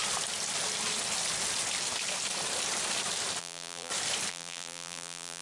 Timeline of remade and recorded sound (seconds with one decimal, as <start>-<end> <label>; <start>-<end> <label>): 0.0-3.4 recorded; 3.4-3.9 remade; 3.9-4.3 recorded; 4.3-5.4 remade